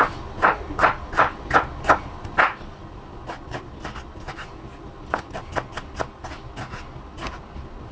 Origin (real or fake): real